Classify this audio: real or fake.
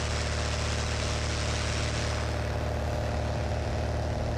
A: real